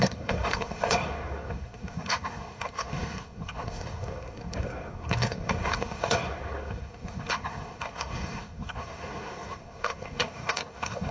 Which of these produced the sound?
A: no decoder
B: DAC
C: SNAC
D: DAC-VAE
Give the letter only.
C